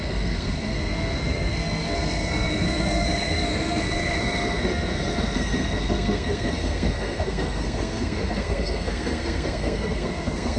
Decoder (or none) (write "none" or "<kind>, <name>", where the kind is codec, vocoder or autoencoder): codec, SNAC